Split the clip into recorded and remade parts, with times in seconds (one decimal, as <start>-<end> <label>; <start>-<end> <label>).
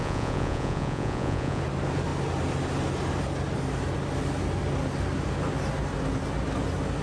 0.0-1.6 remade; 1.6-7.0 recorded